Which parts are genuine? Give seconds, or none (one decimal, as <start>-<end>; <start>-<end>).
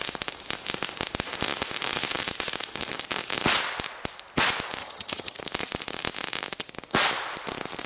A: 0.0-4.8; 5.4-7.9